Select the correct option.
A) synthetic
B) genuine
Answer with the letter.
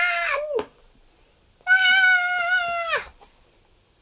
B